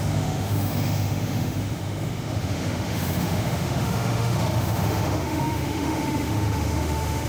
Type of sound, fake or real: fake